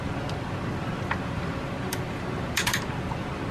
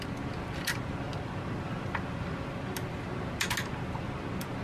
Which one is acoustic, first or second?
second